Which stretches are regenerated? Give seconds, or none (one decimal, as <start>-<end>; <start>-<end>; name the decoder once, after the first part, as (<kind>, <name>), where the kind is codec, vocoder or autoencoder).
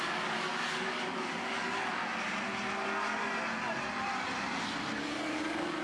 0.0-2.0 (codec, DAC); 5.0-5.8